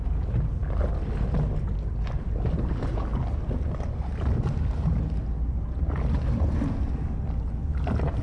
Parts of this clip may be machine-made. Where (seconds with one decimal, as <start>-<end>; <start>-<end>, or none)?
none